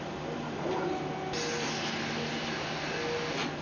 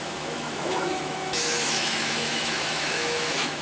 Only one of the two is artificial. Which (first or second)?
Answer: second